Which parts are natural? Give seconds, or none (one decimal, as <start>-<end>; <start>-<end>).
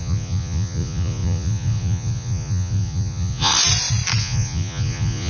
3.5-4.2